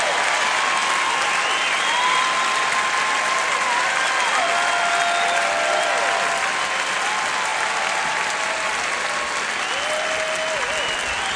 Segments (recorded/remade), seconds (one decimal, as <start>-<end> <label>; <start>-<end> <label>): 0.0-11.4 recorded